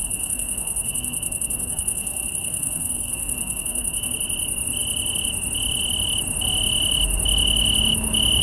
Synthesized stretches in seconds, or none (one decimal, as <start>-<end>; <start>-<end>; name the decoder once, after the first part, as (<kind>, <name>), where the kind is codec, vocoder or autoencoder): 0.0-4.1 (codec, SNAC)